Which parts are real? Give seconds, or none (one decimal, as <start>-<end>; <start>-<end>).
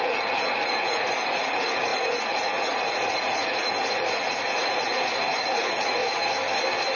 6.0-7.0